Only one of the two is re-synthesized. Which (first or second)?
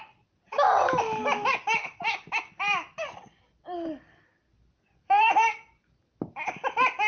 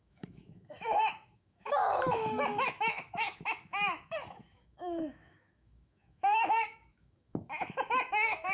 second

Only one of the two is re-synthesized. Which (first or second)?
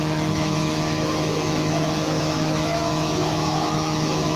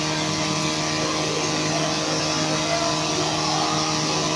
first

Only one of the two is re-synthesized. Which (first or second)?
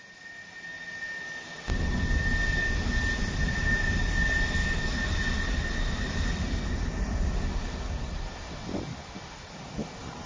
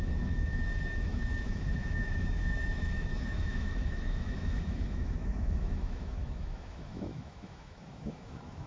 second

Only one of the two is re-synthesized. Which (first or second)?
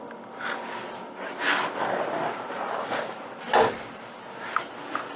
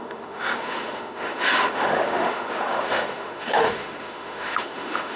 second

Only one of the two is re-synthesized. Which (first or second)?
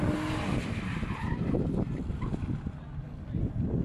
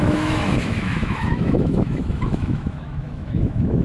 second